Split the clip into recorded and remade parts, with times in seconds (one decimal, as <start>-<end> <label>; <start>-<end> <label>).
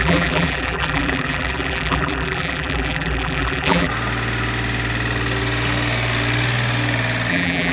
0.0-3.9 remade; 3.9-7.3 recorded; 7.3-7.7 remade